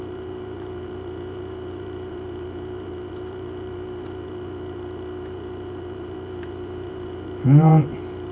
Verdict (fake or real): fake